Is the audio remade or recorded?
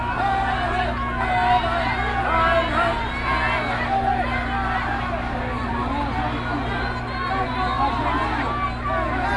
recorded